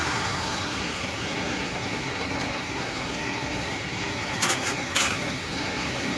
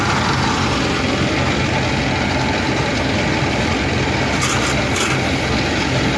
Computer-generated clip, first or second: first